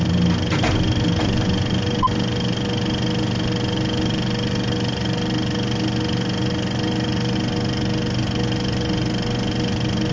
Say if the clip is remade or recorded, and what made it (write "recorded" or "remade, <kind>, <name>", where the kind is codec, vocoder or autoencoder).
recorded